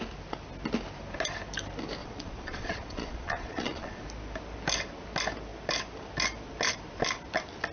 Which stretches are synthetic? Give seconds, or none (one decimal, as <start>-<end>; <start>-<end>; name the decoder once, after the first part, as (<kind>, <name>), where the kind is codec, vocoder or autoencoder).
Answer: 2.0-4.0 (vocoder, Vocos)